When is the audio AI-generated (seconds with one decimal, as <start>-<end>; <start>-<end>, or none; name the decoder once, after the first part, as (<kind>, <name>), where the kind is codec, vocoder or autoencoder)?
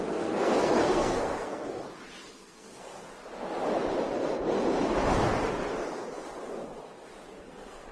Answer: 0.0-1.8 (codec, SNAC); 2.4-2.9; 7.4-7.9